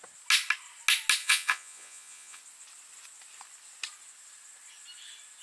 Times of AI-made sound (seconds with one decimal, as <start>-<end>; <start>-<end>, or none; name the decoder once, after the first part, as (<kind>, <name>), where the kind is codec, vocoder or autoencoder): 1.2-2.4 (vocoder, Vocos)